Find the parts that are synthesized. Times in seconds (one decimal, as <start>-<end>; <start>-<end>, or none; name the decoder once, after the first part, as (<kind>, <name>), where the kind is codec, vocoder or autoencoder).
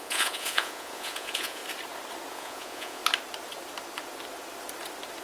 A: 0.0-1.6 (vocoder, Vocos); 2.3-3.0